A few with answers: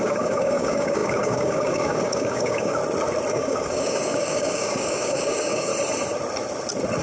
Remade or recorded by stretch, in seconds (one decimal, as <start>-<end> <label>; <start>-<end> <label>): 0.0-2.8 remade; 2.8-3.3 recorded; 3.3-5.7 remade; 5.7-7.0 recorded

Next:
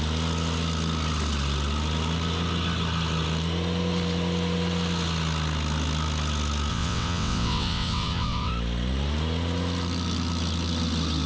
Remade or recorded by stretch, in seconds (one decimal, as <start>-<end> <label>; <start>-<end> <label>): 0.0-6.7 recorded; 6.7-8.5 remade; 8.5-11.3 recorded

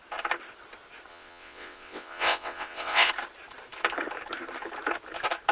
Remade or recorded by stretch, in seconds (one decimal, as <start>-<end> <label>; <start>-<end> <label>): 0.0-1.1 recorded; 1.1-3.1 remade; 3.1-5.5 recorded